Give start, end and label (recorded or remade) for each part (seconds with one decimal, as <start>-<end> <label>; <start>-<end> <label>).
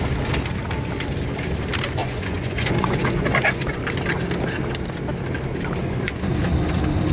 0.0-2.0 recorded; 2.0-3.8 remade; 3.8-5.8 recorded; 5.8-6.3 remade; 6.3-7.1 recorded